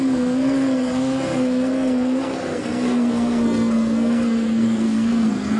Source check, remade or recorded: remade